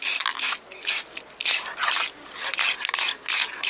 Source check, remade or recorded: recorded